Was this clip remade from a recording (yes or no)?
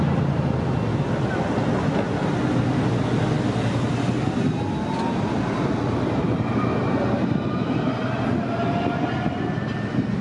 no